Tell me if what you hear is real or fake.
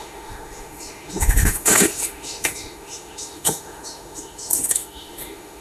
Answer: fake